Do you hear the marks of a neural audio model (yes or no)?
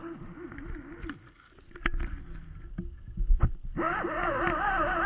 no